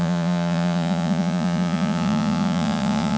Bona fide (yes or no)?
no